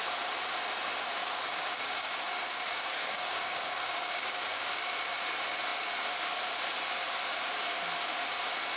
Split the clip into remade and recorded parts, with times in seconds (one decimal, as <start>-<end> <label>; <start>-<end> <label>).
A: 0.0-1.2 recorded; 1.2-4.9 remade; 4.9-8.8 recorded